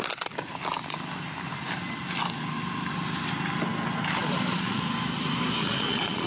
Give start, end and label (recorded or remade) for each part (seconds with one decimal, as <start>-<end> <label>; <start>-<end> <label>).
0.0-4.2 recorded; 4.2-4.8 remade; 4.8-5.6 recorded; 5.6-6.3 remade